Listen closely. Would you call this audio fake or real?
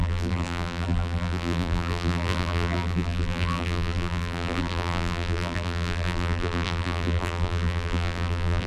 fake